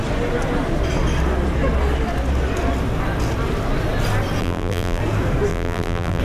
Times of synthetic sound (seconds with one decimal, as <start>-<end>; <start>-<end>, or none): 4.4-5.0; 5.5-6.2